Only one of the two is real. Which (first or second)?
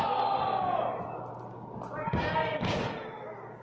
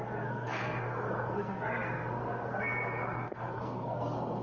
first